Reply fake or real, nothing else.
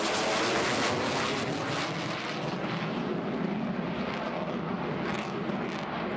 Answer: real